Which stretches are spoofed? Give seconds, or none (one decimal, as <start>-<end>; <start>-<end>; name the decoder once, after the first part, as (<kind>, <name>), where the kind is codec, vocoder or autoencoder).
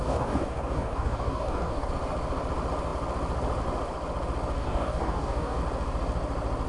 0.0-1.9 (codec, DAC); 4.6-5.6